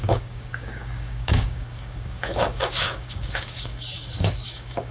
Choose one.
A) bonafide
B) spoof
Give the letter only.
B